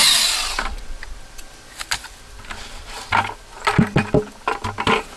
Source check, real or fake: real